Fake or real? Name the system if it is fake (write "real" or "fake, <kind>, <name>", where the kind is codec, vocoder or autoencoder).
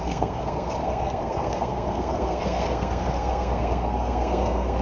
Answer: fake, codec, SNAC